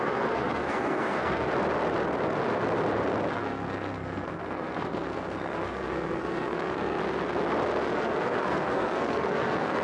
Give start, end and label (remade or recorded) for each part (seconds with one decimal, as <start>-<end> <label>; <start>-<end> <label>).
0.0-1.5 remade; 1.5-3.3 recorded; 3.3-7.0 remade; 7.0-7.9 recorded; 7.9-9.8 remade

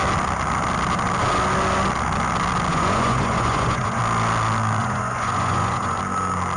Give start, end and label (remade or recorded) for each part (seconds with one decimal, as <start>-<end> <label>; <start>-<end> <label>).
0.0-2.7 recorded; 2.7-4.0 remade; 4.0-4.8 recorded; 4.8-6.0 remade; 6.0-6.6 recorded

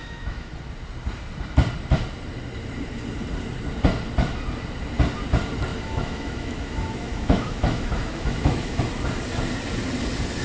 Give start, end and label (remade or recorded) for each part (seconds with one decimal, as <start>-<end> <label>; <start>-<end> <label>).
0.0-0.5 remade; 0.5-5.7 recorded; 5.7-8.8 remade; 8.8-10.4 recorded

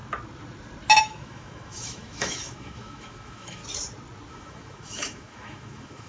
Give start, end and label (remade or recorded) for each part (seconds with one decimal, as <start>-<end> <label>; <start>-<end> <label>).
0.0-1.0 recorded; 1.0-3.6 remade; 3.6-4.3 recorded; 4.3-6.1 remade

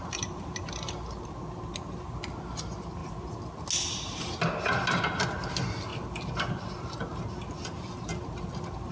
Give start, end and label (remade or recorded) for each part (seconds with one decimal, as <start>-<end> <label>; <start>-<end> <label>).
0.0-8.9 recorded

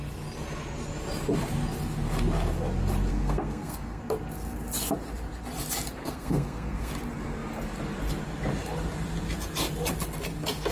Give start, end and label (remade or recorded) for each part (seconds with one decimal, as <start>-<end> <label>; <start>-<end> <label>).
0.0-3.1 recorded; 3.1-4.0 remade; 4.0-6.0 recorded; 6.0-6.9 remade; 6.9-10.7 recorded